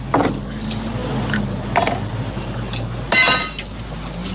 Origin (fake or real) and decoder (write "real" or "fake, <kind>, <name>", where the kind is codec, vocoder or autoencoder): real